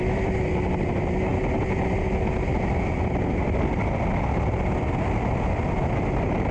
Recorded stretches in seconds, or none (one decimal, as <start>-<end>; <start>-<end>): 0.0-6.5